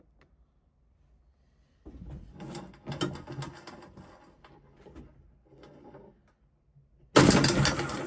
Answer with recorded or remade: recorded